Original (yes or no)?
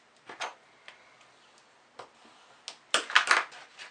yes